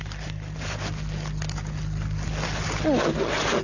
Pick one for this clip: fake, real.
real